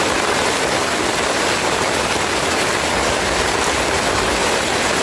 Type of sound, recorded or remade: recorded